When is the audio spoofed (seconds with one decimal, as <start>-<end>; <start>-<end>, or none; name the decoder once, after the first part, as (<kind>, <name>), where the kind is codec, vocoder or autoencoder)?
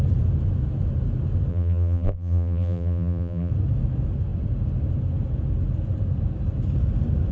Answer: 1.5-3.5 (vocoder, BigVGAN v2)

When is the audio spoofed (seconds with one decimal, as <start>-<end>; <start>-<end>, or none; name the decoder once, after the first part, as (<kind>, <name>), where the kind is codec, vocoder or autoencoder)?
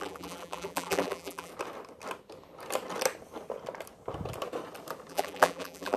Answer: 0.0-1.5 (vocoder, BigVGAN v2); 5.1-6.0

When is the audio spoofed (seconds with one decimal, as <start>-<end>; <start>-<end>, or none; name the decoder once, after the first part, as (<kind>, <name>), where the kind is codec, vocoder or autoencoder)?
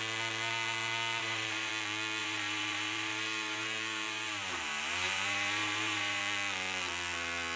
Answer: 1.2-1.7 (vocoder, BigVGAN v2); 2.2-6.2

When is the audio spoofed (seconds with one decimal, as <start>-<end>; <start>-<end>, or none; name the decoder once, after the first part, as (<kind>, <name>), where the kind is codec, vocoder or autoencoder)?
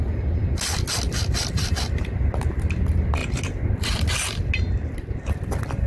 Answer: none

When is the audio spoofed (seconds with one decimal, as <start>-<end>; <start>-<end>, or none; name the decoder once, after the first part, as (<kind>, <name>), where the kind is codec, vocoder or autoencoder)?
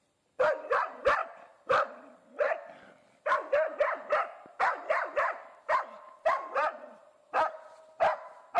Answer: 0.0-3.7 (vocoder, BigVGAN v2); 4.6-8.6